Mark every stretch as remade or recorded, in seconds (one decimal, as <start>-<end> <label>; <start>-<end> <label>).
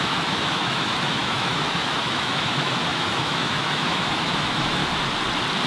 0.0-4.8 remade; 4.8-5.7 recorded